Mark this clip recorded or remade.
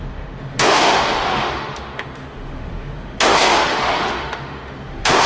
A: remade